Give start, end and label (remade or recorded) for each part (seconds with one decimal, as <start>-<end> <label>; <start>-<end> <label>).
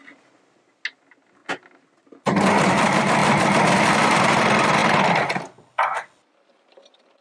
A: 0.0-7.2 recorded